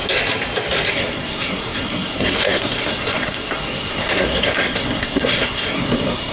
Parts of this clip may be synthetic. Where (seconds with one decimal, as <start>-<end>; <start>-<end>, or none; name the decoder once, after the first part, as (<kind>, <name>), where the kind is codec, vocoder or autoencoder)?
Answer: 0.9-6.3 (codec, SNAC)

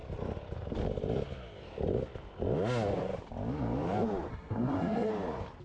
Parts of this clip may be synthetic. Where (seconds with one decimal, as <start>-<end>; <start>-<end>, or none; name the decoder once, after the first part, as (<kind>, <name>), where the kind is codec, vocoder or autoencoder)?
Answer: 4.3-5.1 (codec, SNAC)

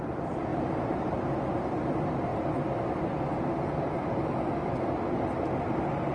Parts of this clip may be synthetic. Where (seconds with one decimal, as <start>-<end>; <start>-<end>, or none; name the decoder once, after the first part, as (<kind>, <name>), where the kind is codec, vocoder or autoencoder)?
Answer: 0.5-1.4 (vocoder, BigVGAN v2)

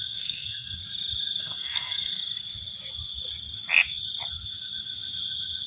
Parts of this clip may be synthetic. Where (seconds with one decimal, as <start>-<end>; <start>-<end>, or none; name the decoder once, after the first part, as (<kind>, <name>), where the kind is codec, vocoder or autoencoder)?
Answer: 0.0-0.8 (codec, SNAC); 1.4-2.2

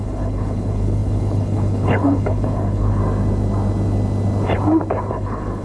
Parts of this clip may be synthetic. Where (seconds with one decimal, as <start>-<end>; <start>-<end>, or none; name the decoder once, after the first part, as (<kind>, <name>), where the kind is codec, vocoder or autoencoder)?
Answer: 0.0-3.0 (codec, HILCodec); 5.1-5.6

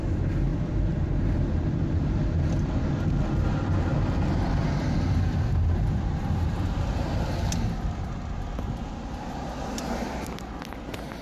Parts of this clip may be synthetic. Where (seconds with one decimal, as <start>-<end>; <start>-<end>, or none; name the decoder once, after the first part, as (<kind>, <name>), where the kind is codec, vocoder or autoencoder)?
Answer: none